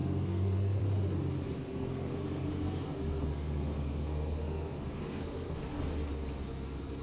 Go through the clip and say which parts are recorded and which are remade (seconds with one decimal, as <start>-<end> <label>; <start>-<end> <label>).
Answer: 0.0-0.8 remade; 0.8-1.6 recorded; 1.6-5.8 remade; 5.8-7.0 recorded